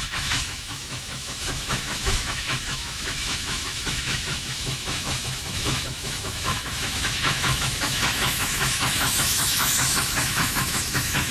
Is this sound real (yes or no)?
no